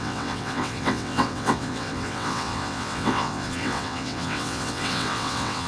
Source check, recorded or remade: remade